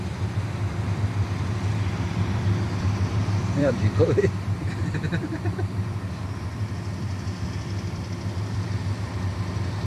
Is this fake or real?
fake